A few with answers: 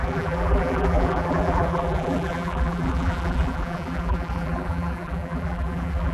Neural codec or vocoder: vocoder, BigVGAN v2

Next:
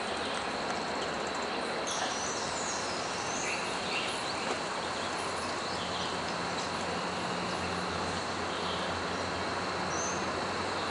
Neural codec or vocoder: none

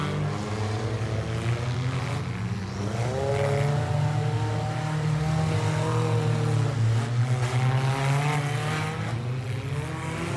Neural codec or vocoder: none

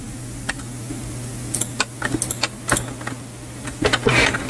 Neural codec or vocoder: none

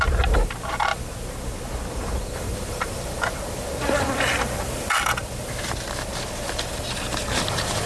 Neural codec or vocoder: vocoder, BigVGAN v2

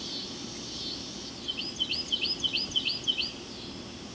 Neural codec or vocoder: none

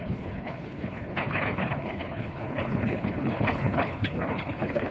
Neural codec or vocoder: codec, HILCodec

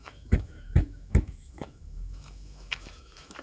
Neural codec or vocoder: autoencoder, DAC-VAE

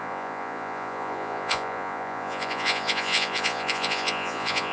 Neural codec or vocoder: vocoder, Vocos